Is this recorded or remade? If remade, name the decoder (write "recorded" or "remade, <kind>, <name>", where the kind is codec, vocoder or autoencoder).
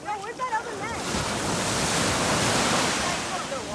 recorded